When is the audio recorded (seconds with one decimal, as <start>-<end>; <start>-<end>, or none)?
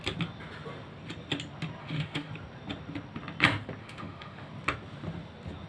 0.0-1.8; 2.3-3.8; 4.5-5.7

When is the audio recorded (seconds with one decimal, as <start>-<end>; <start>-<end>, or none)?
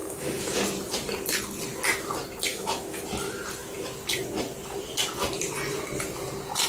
0.6-2.5; 3.0-6.7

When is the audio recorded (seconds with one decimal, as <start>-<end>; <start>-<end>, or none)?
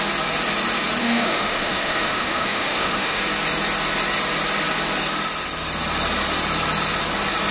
0.0-1.0; 3.2-7.5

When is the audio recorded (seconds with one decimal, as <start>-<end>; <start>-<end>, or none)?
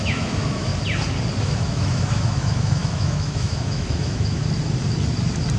0.7-1.4; 4.4-5.6